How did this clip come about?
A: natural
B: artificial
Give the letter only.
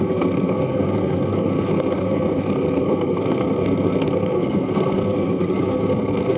B